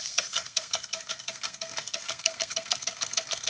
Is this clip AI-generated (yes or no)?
yes